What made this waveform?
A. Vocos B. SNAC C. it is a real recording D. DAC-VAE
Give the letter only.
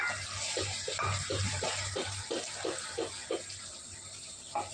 C